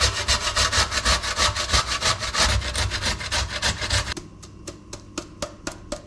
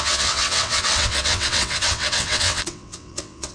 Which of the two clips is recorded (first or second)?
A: first